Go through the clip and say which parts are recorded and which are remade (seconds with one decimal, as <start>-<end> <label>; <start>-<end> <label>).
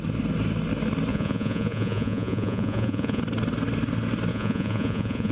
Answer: 0.0-1.1 recorded; 1.1-3.2 remade; 3.2-4.3 recorded; 4.3-5.3 remade